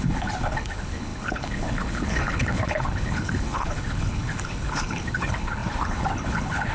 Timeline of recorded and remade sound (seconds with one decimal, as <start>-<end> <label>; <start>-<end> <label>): 0.0-6.7 remade